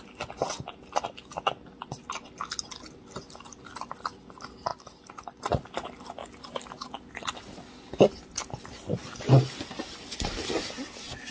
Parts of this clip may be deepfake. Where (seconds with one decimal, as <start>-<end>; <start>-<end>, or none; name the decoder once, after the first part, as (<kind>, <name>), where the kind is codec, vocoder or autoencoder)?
none